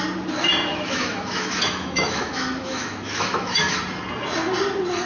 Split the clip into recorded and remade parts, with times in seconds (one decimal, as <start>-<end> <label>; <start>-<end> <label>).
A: 0.0-0.7 recorded; 0.7-3.8 remade; 3.8-5.1 recorded